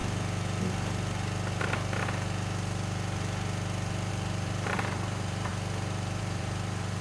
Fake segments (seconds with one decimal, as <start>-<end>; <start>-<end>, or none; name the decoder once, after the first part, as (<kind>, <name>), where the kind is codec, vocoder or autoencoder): 4.1-5.5 (vocoder, BigVGAN v2); 6.2-7.0